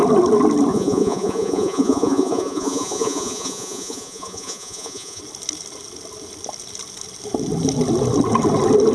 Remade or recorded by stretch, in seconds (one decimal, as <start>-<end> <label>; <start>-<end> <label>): 0.0-0.7 recorded; 0.7-5.2 remade; 5.2-8.9 recorded